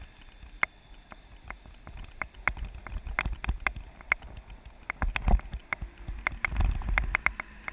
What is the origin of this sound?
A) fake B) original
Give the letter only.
B